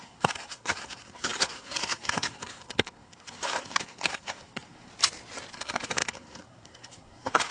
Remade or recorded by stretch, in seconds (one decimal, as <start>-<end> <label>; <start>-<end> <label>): 0.0-4.9 remade; 4.9-5.5 recorded; 5.5-7.5 remade